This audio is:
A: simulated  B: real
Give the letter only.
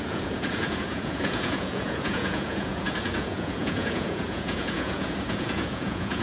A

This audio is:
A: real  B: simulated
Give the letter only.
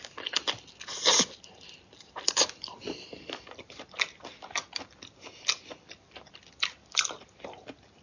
A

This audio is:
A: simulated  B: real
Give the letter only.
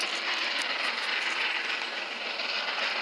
B